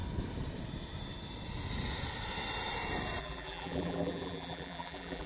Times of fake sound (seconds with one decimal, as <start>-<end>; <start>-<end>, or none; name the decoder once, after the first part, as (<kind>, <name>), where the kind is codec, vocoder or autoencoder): 3.2-5.3 (vocoder, BigVGAN v2)